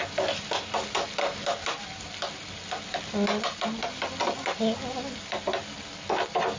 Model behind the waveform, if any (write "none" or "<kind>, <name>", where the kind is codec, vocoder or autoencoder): none